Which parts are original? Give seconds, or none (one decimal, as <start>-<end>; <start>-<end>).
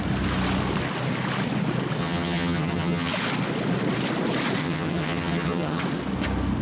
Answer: 0.0-2.0; 3.1-4.6; 5.8-6.6